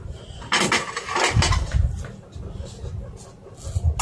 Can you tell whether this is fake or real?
real